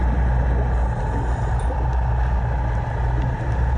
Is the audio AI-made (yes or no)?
no